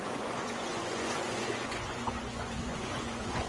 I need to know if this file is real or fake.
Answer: fake